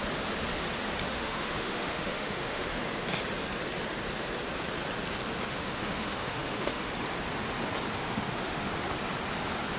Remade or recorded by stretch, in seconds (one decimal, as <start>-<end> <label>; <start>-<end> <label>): 0.0-1.1 recorded; 1.1-2.8 remade; 2.8-5.5 recorded; 5.5-6.9 remade; 6.9-8.0 recorded; 8.0-8.7 remade; 8.7-9.8 recorded